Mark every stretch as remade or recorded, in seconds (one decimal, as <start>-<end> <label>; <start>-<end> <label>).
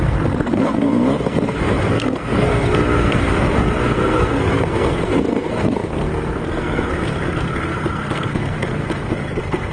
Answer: 0.0-9.7 remade